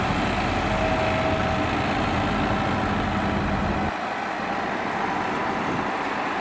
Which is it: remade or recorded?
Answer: recorded